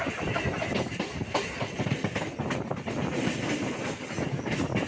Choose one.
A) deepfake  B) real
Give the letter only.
B